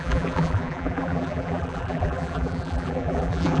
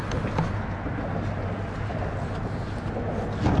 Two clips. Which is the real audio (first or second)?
second